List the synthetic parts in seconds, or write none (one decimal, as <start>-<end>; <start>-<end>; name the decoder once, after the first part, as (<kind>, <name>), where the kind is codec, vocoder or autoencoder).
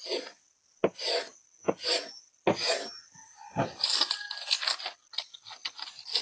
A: none